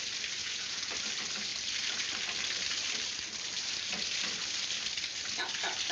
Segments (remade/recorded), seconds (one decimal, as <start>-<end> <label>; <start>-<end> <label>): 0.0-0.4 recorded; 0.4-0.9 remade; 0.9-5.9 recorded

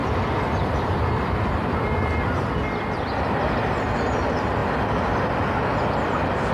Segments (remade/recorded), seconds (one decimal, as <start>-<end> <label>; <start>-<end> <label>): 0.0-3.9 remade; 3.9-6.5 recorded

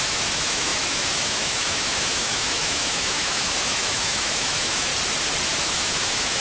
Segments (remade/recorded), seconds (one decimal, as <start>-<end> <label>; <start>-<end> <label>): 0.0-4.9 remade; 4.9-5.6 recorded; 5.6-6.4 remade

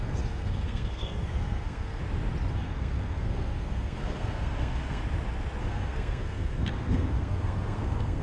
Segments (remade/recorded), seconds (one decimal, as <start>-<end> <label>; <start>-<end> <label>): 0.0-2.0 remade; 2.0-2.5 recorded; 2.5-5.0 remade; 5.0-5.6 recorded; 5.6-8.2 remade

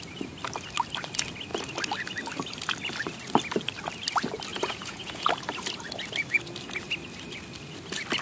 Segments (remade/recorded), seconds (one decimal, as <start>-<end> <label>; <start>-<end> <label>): 0.0-4.5 recorded; 4.5-5.3 remade; 5.3-8.2 recorded

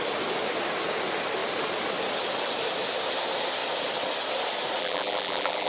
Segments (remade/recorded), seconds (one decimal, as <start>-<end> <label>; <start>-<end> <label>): 0.0-4.8 recorded; 4.8-5.7 remade

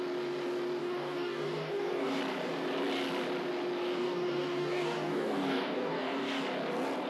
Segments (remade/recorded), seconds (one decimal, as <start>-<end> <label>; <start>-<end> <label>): 0.0-0.8 recorded; 0.8-2.2 remade; 2.2-3.9 recorded; 3.9-6.4 remade; 6.4-7.1 recorded